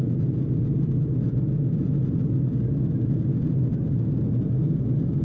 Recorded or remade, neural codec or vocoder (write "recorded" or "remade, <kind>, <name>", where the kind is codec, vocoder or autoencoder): recorded